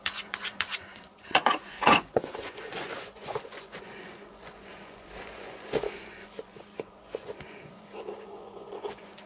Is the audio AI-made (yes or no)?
yes